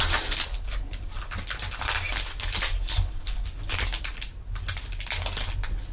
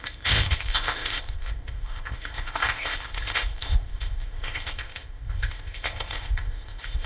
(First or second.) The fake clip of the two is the second